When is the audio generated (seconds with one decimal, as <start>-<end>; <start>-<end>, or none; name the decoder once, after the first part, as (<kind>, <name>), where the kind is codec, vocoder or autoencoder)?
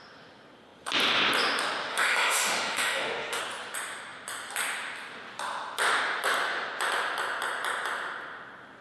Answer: 1.9-3.4 (autoencoder, DAC-VAE)